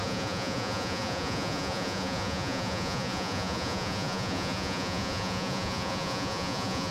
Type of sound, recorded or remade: remade